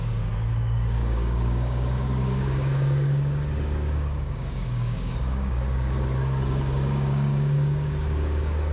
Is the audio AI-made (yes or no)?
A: yes